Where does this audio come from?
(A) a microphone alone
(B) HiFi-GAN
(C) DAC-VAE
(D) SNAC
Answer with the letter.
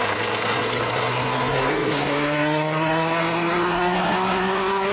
D